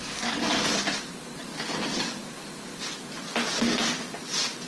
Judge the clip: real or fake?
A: real